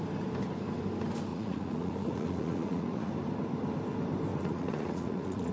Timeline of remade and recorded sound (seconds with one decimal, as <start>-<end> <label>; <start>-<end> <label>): 0.0-1.3 recorded; 1.3-3.1 remade; 3.1-4.3 recorded; 4.3-5.5 remade